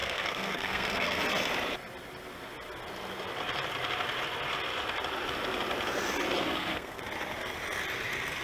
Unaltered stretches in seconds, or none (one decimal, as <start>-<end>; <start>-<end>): 1.2-6.4; 7.0-8.4